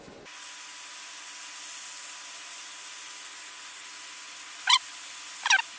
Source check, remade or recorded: recorded